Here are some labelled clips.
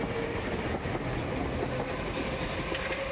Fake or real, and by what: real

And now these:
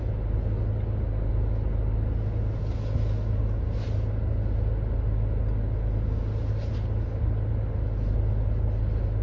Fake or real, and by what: real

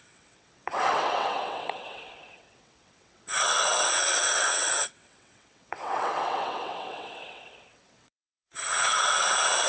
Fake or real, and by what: fake, vocoder, WaveNeXt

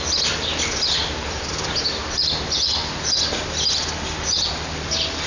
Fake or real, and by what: real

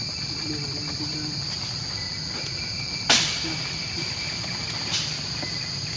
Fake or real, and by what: real